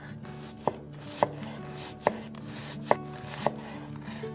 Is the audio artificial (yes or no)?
no